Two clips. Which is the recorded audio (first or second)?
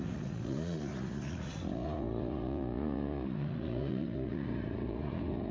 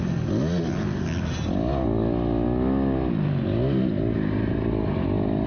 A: second